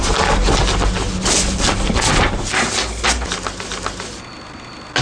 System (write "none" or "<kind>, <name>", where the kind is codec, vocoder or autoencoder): none